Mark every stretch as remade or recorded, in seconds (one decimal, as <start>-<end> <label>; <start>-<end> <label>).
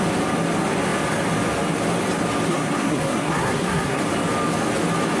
0.0-2.5 recorded; 2.5-4.0 remade; 4.0-5.2 recorded